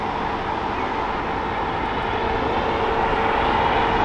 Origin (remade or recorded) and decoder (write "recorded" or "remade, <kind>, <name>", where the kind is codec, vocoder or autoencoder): recorded